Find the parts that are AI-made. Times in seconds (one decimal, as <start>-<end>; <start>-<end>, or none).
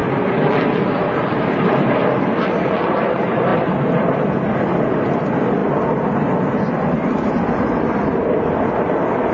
3.5-4.3